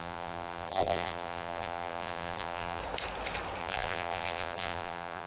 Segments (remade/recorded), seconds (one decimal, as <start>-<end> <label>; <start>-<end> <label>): 0.0-2.8 remade; 2.8-3.6 recorded; 3.6-5.3 remade